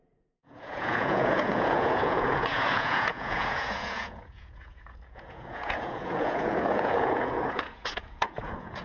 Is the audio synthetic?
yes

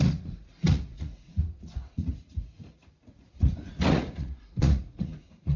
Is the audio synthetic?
yes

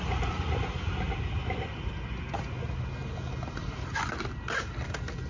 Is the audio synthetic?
no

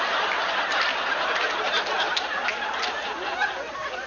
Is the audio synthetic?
no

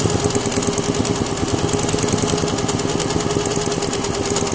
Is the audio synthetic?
no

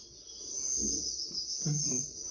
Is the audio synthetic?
no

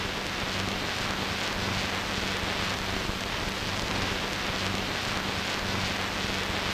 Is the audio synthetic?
no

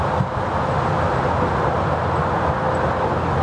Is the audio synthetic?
no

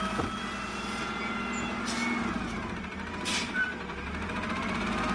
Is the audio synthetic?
no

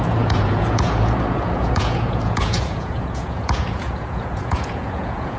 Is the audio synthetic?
yes